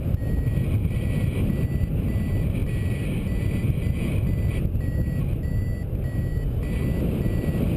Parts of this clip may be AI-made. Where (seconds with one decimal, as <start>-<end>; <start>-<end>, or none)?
none